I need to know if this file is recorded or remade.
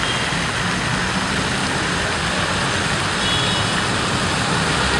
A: recorded